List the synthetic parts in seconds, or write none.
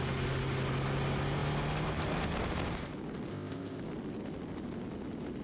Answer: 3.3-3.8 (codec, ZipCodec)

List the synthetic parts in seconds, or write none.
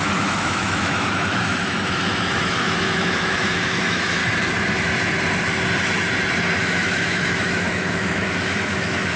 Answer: 0.0-4.2 (autoencoder, DAC-VAE); 6.6-9.2